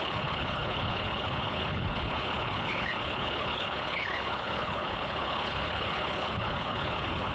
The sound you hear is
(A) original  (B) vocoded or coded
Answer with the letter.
B